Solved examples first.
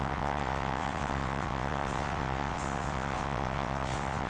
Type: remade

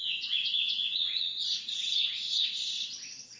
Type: remade